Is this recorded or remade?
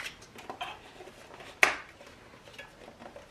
recorded